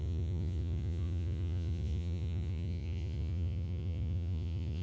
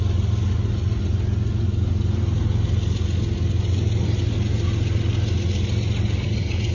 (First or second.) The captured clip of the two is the second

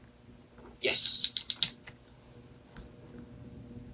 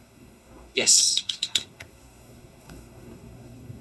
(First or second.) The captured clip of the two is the first